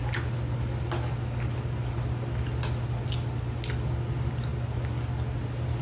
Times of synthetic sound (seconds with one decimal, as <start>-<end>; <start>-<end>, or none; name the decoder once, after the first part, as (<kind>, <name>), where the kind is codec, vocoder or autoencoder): none